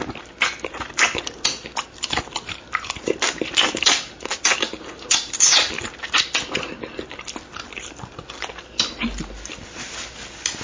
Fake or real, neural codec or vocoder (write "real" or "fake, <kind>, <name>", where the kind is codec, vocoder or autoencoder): real